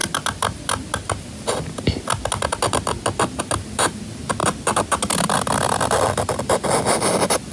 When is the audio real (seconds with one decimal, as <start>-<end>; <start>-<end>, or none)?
0.0-7.5